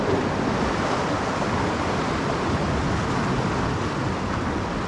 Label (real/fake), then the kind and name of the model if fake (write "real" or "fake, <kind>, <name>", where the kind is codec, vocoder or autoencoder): real